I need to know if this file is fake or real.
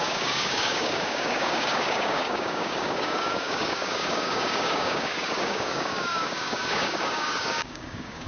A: fake